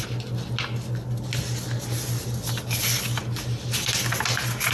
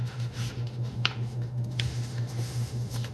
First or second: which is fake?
second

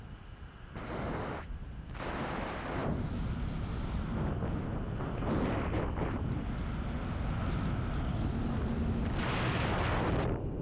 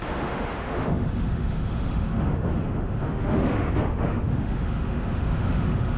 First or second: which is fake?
second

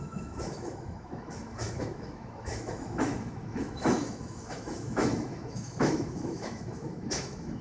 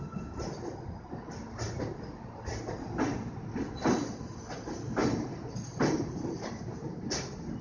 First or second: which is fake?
first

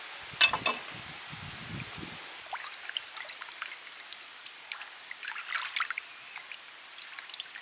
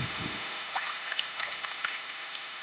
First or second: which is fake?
second